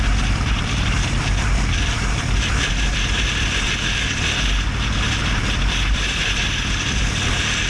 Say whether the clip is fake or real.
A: fake